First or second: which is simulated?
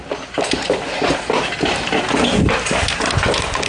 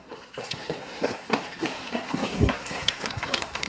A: second